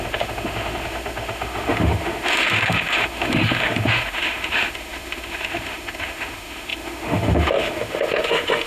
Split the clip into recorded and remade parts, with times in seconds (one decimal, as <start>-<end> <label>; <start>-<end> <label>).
0.0-8.7 remade